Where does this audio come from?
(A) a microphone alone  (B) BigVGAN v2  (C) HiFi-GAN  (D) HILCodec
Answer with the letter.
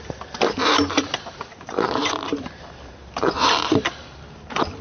B